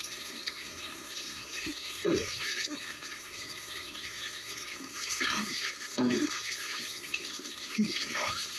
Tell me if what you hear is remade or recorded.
remade